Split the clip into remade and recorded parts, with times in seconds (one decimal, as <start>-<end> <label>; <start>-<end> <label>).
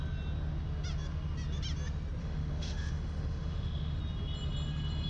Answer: 0.0-2.2 recorded; 2.2-4.0 remade; 4.0-5.1 recorded